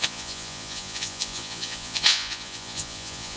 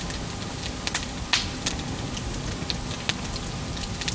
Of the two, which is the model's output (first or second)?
first